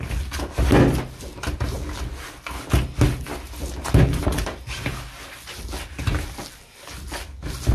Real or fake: real